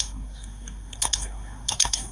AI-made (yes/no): yes